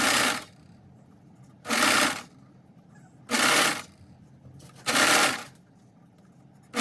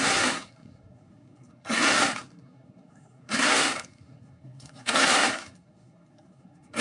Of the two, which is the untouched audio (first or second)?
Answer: first